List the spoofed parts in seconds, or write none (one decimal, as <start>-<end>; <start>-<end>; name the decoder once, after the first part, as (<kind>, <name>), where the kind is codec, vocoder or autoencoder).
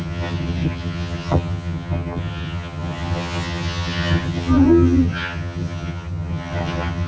0.0-7.1 (vocoder, HiFi-GAN)